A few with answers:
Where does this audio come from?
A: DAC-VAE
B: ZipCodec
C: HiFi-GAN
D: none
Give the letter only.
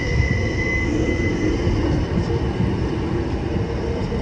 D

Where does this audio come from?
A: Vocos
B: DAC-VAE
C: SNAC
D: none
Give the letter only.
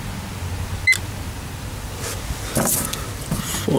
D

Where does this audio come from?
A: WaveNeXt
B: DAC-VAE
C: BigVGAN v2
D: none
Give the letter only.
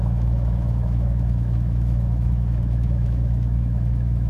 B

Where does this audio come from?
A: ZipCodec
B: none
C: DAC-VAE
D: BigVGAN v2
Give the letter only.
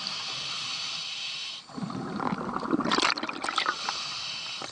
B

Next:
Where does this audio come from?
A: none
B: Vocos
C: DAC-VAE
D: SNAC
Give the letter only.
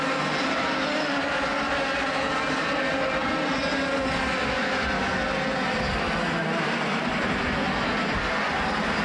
A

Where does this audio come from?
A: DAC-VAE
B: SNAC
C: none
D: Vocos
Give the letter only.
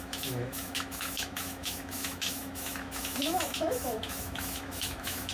A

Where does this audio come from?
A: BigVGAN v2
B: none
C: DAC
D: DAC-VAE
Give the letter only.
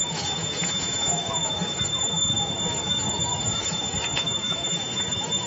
D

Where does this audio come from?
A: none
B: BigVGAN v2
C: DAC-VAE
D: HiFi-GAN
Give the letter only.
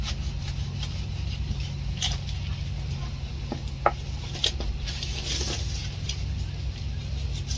A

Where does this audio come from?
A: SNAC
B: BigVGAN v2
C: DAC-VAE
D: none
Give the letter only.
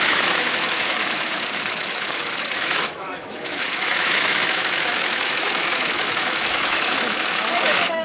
C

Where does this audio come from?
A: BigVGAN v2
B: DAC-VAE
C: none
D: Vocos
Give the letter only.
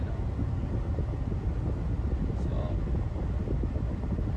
C